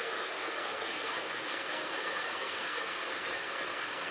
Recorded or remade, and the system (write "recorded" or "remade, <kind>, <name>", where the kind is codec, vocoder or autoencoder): remade, codec, SNAC